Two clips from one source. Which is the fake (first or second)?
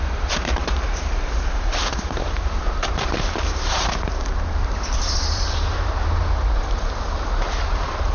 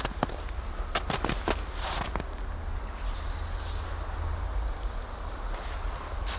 first